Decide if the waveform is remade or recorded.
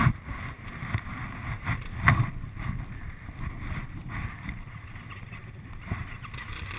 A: recorded